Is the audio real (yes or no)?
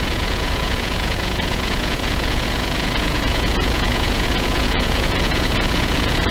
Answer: no